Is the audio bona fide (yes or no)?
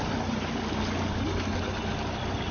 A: yes